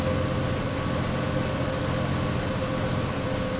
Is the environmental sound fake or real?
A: real